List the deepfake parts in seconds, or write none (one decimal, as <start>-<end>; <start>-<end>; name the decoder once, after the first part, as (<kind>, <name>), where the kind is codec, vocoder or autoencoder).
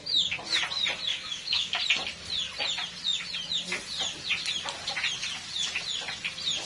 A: 1.1-1.8 (codec, DAC)